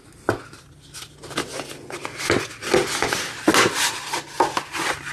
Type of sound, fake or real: real